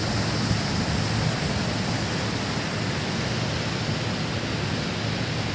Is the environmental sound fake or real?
real